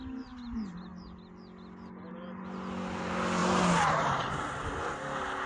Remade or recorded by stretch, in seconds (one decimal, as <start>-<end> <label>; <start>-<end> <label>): 0.0-3.4 recorded; 3.4-4.7 remade; 4.7-5.5 recorded